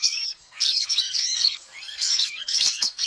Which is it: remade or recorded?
remade